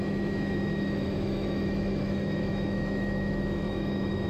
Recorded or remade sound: remade